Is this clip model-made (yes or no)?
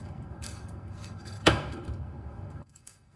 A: yes